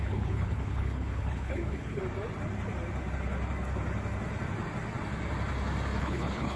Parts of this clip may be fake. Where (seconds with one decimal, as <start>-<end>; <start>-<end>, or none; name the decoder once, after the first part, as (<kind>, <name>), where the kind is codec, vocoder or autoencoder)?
0.0-2.0 (codec, HILCodec); 6.0-6.6